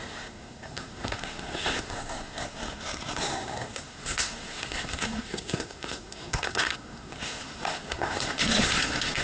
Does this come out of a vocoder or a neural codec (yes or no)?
yes